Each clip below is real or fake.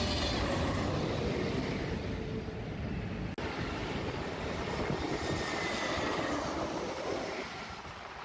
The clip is real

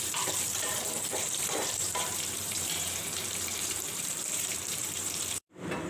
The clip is fake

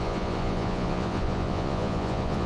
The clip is fake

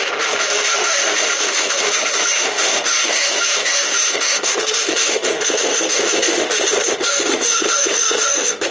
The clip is fake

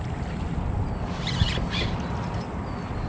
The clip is real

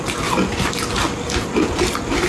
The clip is real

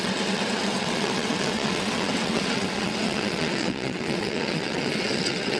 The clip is fake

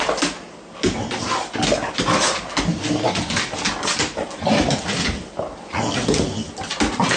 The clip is real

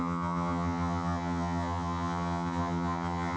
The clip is fake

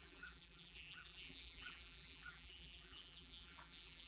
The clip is fake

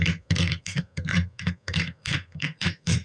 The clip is fake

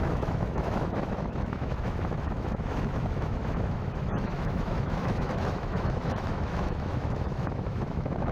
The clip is fake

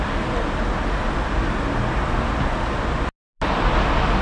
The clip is real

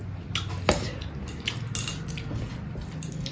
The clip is real